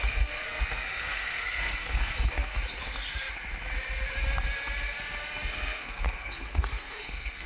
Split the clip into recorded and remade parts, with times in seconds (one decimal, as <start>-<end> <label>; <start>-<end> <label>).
0.0-2.1 remade; 2.1-5.5 recorded; 5.5-7.5 remade

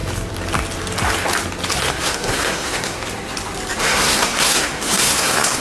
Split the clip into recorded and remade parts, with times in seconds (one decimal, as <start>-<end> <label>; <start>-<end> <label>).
0.0-1.9 recorded; 1.9-3.0 remade; 3.0-3.8 recorded; 3.8-5.6 remade

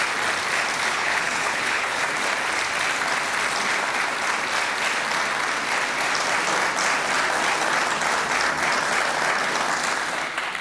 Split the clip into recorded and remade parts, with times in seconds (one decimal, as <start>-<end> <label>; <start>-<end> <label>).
0.0-0.9 recorded; 0.9-2.0 remade; 2.0-10.6 recorded

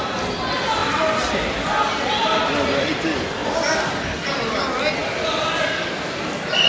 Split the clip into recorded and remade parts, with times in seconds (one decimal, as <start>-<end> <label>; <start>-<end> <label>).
0.0-6.7 recorded

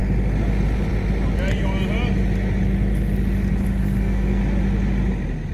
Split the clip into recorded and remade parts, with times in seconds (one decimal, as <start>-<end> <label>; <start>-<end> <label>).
0.0-3.8 recorded; 3.8-4.4 remade; 4.4-5.5 recorded